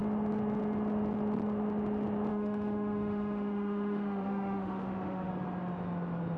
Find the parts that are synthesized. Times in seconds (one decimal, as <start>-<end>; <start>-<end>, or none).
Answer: 2.3-5.3